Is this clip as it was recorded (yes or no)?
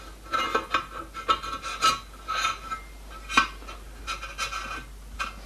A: yes